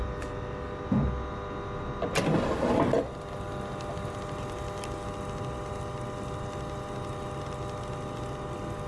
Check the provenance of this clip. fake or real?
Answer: real